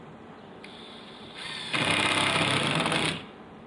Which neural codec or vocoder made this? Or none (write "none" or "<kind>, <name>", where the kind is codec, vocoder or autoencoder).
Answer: none